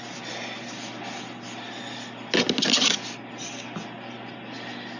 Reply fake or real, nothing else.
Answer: real